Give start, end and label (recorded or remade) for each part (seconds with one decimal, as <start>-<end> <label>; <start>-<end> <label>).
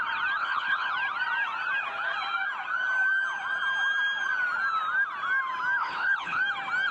0.0-0.4 recorded; 0.4-0.9 remade; 0.9-5.8 recorded; 5.8-6.4 remade; 6.4-6.9 recorded